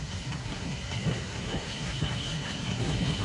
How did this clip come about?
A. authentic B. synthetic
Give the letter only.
B